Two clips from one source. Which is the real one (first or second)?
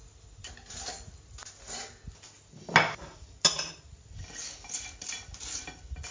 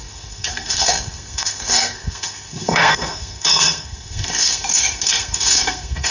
first